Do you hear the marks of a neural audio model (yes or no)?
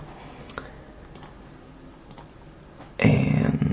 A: no